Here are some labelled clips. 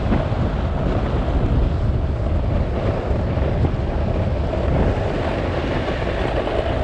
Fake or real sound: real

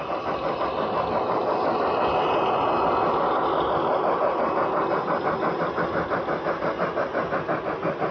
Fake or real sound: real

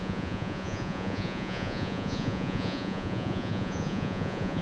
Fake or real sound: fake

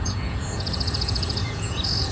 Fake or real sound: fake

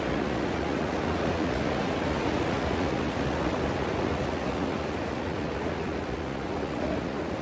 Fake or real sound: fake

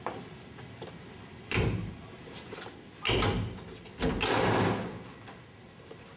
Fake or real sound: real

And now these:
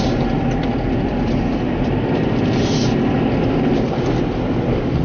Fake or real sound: real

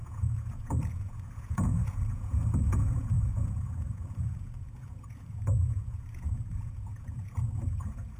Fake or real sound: fake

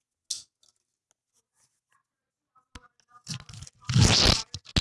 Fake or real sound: real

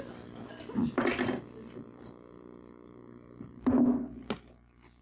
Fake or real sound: real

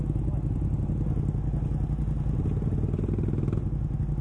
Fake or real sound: real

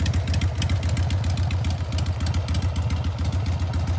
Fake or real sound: real